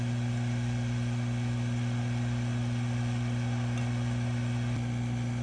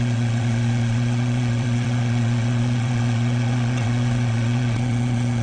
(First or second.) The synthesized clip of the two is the second